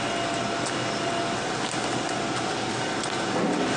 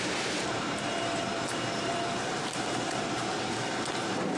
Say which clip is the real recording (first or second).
first